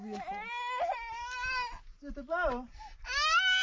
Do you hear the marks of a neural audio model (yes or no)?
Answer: no